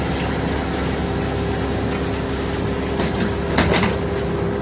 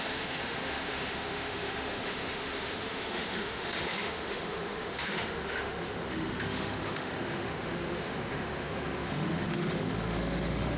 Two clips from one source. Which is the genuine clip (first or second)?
first